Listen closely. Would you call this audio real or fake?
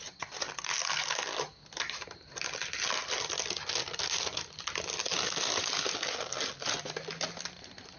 real